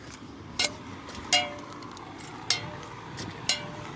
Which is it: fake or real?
real